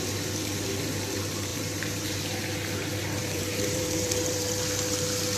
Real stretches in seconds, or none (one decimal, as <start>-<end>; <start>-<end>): 0.0-1.5; 2.2-3.2; 4.5-5.4